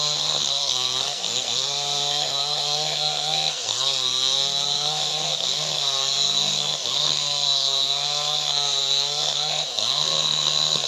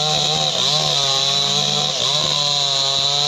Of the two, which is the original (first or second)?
second